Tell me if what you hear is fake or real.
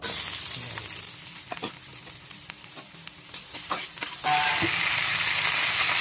real